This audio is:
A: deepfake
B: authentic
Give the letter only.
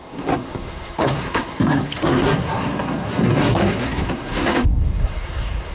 A